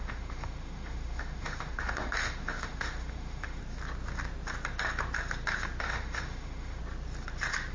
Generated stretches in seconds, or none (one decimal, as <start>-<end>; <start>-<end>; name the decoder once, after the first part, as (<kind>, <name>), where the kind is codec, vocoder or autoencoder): 0.0-3.6 (autoencoder, DAC-VAE); 5.8-6.8